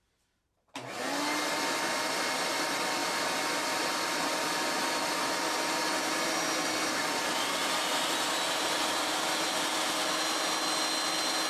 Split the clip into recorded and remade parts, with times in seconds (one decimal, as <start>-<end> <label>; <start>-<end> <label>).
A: 0.0-11.5 recorded